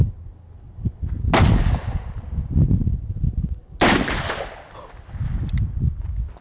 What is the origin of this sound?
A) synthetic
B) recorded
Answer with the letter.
B